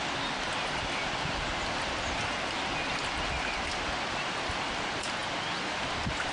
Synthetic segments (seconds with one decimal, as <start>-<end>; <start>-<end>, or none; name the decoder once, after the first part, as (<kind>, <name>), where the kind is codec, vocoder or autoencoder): none